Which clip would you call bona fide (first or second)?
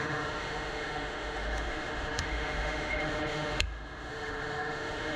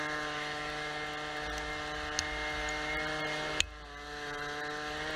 second